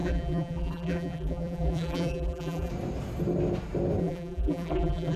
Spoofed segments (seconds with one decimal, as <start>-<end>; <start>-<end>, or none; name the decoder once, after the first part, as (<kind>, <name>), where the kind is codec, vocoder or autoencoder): 0.0-2.7 (vocoder, BigVGAN v2); 4.0-5.2